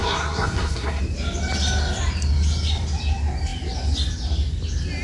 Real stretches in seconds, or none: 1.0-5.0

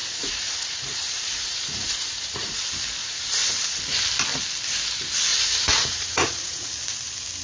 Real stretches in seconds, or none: 2.6-3.0; 3.8-5.3; 6.7-7.4